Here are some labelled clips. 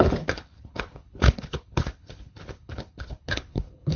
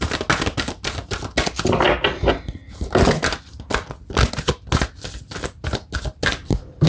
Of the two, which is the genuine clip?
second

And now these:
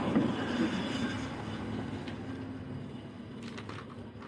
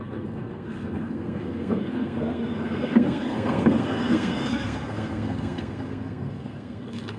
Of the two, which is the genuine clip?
first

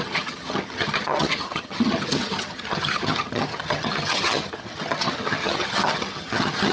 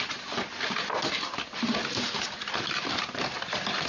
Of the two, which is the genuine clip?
second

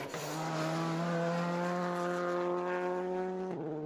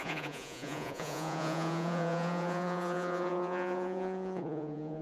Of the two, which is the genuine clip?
first